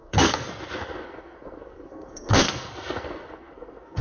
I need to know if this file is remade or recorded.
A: remade